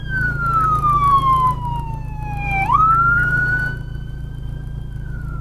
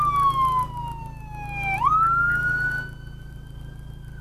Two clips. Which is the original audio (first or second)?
second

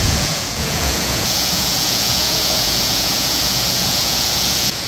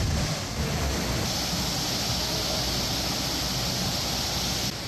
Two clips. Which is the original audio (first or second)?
second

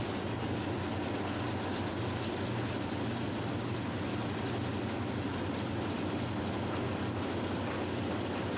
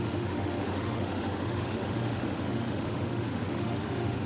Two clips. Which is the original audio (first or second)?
first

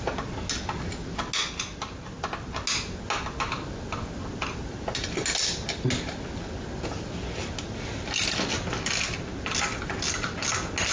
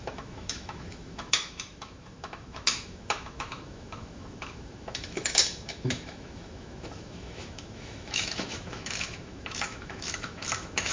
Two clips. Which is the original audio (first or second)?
first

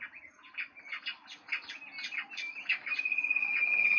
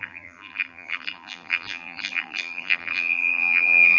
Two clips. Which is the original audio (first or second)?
first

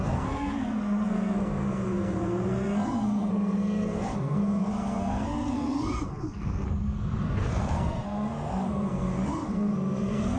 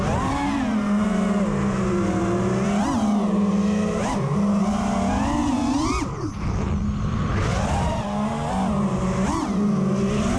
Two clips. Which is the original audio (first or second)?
second